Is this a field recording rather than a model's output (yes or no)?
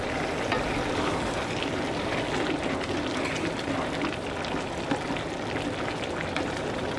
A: yes